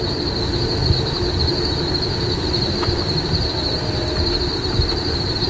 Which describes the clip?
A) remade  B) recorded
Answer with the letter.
B